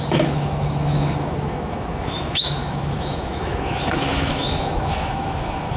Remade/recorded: remade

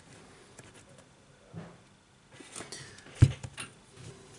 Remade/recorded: recorded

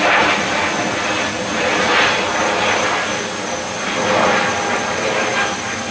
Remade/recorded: recorded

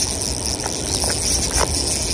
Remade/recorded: recorded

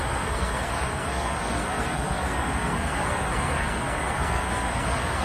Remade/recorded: remade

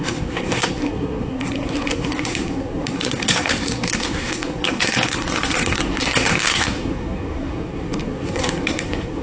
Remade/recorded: remade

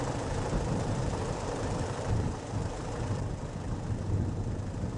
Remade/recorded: remade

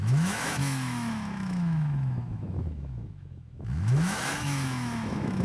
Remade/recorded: remade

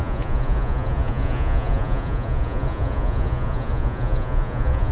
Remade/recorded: remade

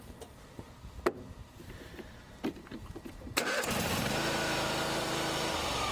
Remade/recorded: remade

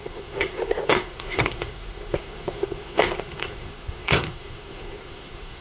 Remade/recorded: remade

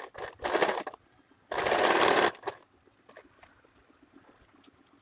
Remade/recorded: recorded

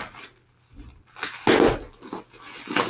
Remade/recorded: recorded